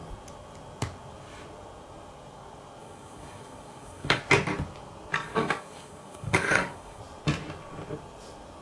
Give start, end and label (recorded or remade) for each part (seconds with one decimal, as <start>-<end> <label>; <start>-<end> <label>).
0.0-2.8 recorded; 2.8-4.2 remade; 4.2-5.2 recorded; 5.2-7.0 remade; 7.0-8.6 recorded